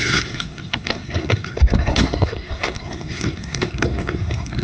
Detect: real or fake fake